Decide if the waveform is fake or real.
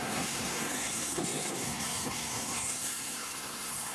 fake